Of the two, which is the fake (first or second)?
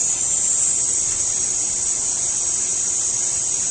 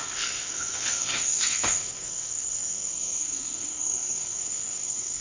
second